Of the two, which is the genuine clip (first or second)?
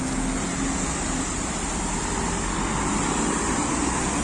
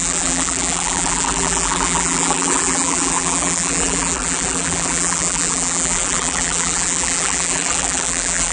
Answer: first